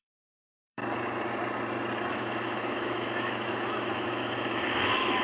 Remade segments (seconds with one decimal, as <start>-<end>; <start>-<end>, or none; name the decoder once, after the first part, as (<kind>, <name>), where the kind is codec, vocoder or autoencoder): 0.0-0.8 (autoencoder, DAC-VAE); 2.1-5.2

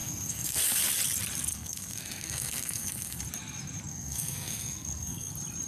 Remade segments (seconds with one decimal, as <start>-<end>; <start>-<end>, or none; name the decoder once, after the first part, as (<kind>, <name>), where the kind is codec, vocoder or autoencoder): 0.0-0.6 (codec, SNAC); 1.5-3.2; 3.9-5.3

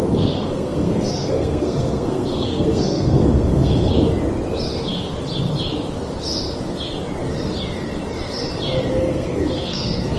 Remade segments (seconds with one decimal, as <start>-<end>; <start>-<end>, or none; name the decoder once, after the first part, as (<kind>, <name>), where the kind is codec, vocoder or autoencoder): 0.0-3.9 (codec, SNAC); 8.9-10.2

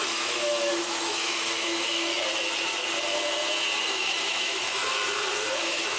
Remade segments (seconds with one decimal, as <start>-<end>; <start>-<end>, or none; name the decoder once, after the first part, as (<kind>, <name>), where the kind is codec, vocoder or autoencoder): 0.0-2.1 (autoencoder, DAC-VAE); 3.9-4.8; 5.6-6.0

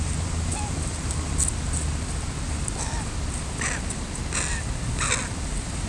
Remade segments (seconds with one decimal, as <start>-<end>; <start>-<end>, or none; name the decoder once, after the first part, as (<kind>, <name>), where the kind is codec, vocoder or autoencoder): none

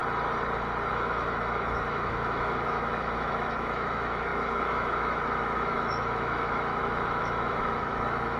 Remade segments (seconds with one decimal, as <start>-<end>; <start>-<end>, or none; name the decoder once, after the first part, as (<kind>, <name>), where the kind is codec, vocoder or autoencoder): 0.9-8.4 (autoencoder, DAC-VAE)

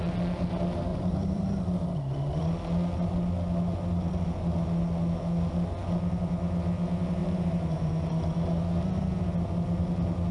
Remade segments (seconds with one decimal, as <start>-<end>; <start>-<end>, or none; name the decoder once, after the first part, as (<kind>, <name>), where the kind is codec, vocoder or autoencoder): 0.9-1.5 (vocoder, BigVGAN v2); 7.2-7.9